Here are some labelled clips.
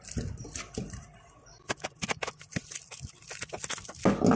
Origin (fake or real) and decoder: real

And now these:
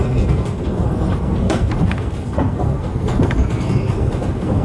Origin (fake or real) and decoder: fake, codec, SNAC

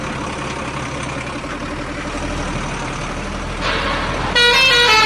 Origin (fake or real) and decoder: real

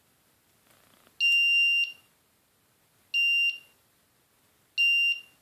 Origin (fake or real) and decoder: real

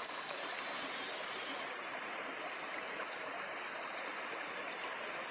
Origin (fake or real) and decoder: real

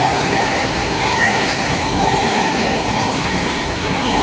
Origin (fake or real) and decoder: fake, codec, SNAC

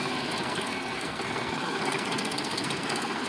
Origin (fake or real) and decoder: fake, codec, SNAC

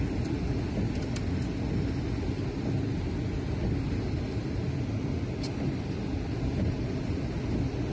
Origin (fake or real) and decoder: real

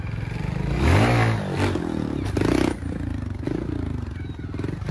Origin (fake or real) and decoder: real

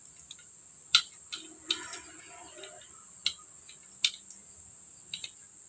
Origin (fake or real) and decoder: real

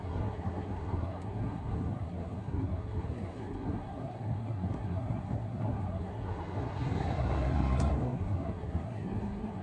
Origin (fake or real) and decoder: fake, codec, SNAC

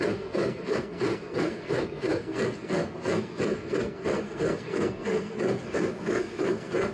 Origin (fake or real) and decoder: fake, codec, SNAC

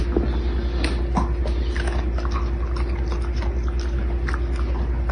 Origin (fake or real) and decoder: real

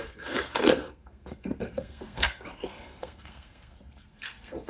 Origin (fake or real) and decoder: fake, codec, SNAC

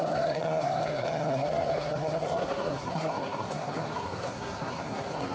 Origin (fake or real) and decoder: fake, codec, SNAC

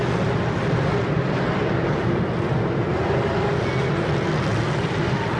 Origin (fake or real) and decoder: real